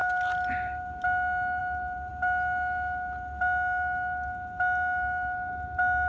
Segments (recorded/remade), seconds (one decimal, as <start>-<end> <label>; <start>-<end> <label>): 0.0-6.1 recorded